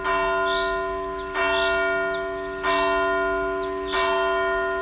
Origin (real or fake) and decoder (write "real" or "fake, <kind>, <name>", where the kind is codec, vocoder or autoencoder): real